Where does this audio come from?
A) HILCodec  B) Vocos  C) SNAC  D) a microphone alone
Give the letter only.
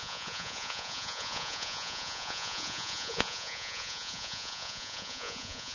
B